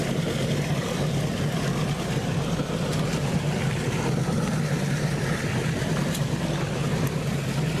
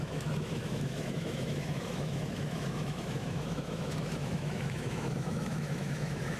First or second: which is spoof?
second